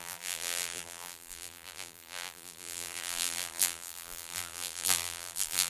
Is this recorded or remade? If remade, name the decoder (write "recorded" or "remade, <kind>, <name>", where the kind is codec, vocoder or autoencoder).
remade, vocoder, BigVGAN v2